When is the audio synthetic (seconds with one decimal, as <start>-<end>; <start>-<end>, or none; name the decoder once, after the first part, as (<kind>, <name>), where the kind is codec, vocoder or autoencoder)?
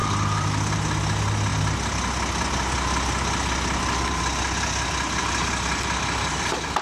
0.0-0.5 (vocoder, BigVGAN v2)